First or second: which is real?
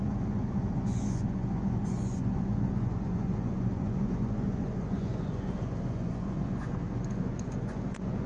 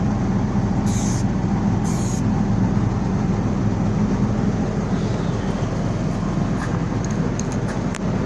second